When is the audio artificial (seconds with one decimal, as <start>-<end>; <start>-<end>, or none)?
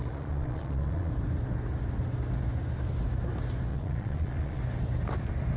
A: 0.0-1.1; 3.7-4.6